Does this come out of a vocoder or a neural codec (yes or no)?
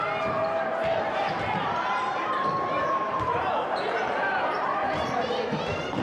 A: yes